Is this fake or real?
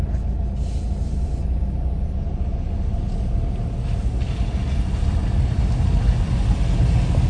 real